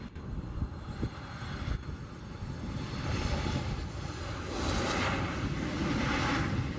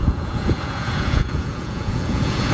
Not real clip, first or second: second